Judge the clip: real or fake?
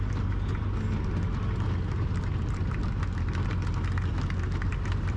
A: real